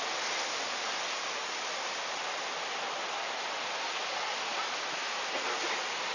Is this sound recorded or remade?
recorded